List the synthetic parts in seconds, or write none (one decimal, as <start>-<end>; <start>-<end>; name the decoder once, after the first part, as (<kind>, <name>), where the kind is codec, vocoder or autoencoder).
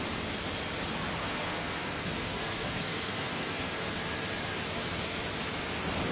1.2-3.9 (codec, SNAC)